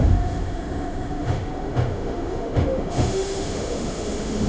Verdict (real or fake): fake